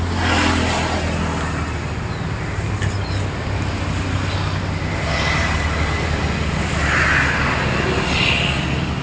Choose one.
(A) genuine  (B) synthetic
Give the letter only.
A